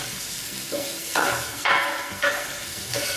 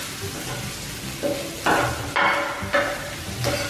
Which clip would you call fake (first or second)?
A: first